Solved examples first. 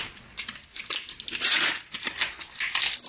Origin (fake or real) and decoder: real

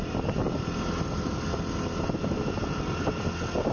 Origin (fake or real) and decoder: real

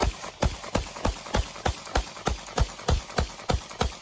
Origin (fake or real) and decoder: real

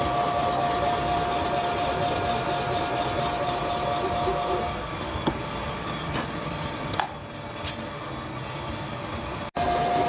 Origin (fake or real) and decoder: real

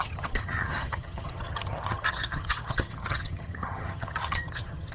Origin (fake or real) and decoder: fake, vocoder, HiFi-GAN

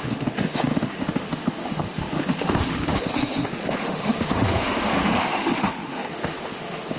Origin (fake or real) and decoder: fake, autoencoder, DAC-VAE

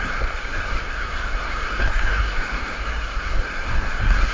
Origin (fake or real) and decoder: fake, codec, SNAC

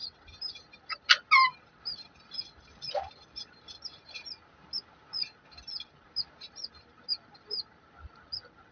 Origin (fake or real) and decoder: real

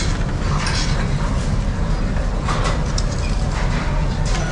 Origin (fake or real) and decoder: real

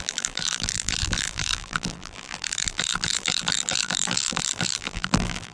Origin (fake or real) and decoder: fake, vocoder, BigVGAN v2